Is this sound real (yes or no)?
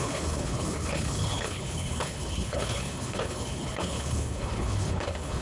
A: no